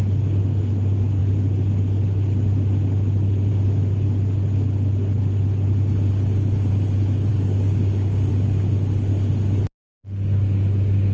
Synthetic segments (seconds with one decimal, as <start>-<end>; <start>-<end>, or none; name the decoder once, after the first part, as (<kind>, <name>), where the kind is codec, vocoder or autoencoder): 7.3-8.3 (codec, DAC)